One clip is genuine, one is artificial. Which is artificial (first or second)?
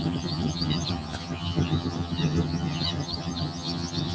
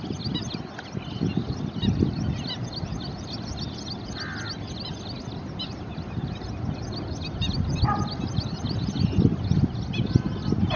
first